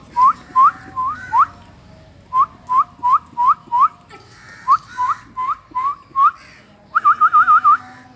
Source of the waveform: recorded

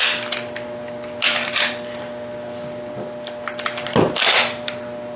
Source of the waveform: recorded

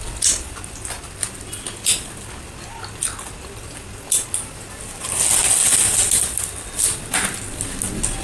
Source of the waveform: recorded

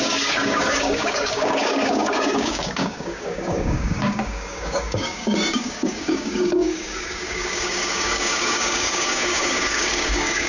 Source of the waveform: remade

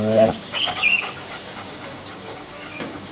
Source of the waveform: remade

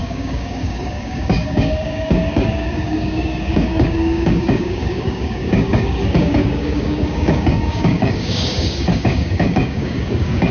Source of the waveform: remade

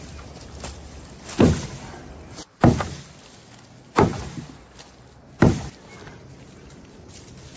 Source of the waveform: recorded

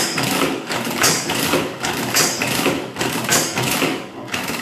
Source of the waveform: remade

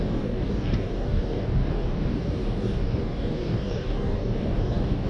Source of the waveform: remade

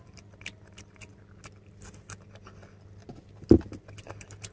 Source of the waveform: recorded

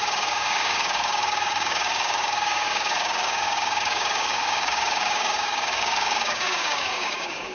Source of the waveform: remade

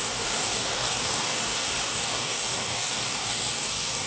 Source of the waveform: remade